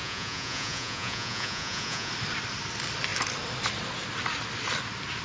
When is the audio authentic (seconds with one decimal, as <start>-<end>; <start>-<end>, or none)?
2.1-5.2